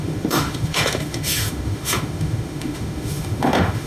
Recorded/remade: remade